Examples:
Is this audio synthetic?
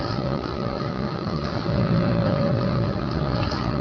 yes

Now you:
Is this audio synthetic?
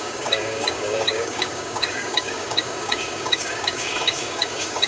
yes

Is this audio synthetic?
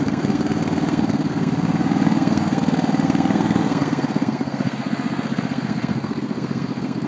yes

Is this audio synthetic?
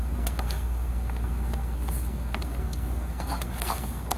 yes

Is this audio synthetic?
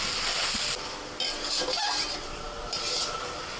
no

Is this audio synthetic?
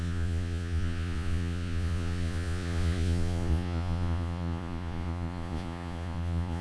yes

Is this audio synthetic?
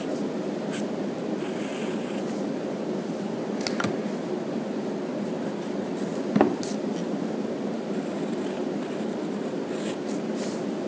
no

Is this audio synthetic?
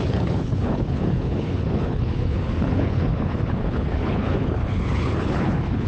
yes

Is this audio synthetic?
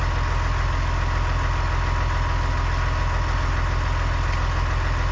no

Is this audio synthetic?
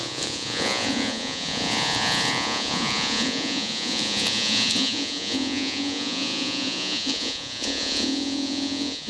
yes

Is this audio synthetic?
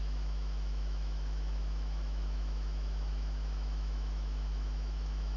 yes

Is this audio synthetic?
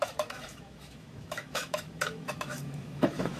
yes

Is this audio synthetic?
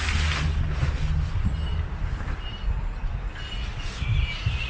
no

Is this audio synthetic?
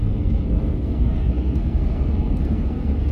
yes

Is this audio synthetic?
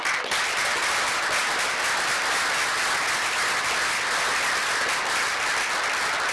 no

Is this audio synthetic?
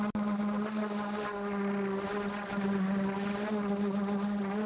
no